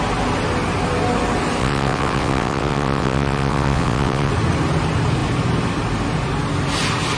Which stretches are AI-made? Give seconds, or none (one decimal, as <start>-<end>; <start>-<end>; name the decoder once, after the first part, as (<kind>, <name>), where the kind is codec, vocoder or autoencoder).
1.6-4.3 (vocoder, WaveNeXt)